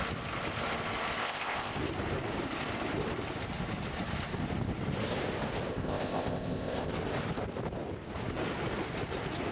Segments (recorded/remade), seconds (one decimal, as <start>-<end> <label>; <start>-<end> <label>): 0.0-1.2 recorded; 1.2-1.8 remade; 1.8-5.7 recorded; 5.7-6.9 remade; 6.9-9.5 recorded